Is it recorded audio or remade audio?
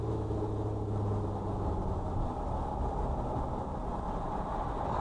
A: recorded